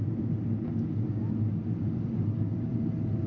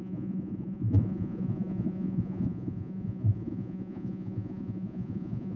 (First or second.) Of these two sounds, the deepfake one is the second